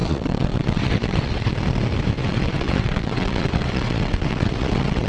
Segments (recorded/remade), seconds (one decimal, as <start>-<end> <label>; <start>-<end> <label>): 0.0-1.5 remade; 1.5-2.2 recorded; 2.2-5.1 remade